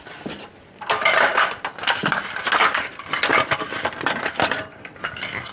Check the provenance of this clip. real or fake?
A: real